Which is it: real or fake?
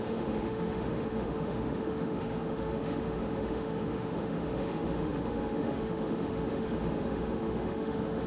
fake